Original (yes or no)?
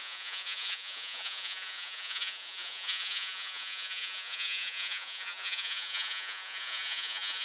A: no